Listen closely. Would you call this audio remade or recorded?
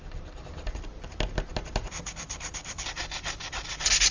recorded